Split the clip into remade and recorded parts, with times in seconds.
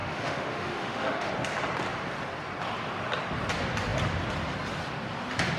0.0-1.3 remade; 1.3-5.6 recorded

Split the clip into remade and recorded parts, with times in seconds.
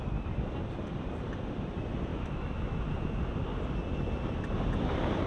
0.0-2.1 recorded; 2.1-2.8 remade; 2.8-5.3 recorded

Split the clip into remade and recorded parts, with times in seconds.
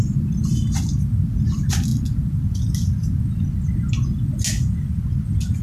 0.0-5.6 recorded